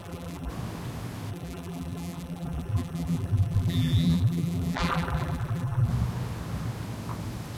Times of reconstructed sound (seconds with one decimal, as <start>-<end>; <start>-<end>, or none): 0.0-0.5; 1.3-5.9

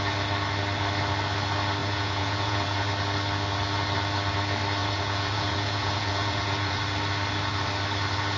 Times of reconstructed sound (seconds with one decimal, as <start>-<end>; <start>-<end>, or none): 1.8-2.9; 4.8-6.8